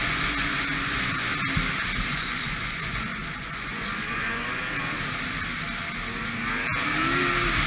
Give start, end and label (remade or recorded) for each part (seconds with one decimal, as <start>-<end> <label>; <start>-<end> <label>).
0.0-1.3 remade; 1.3-2.1 recorded; 2.1-4.6 remade; 4.6-7.7 recorded